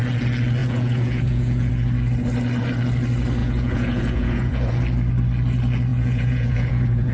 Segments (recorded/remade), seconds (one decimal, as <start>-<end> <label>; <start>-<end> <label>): 0.0-0.6 recorded; 0.6-1.7 remade; 1.7-3.4 recorded; 3.4-4.7 remade; 4.7-5.9 recorded; 5.9-7.1 remade